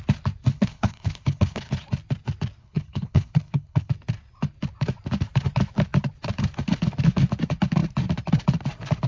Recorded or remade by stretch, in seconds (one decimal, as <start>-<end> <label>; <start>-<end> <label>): 0.0-0.5 recorded; 0.5-1.7 remade; 1.7-2.6 recorded; 2.6-3.9 remade; 3.9-9.1 recorded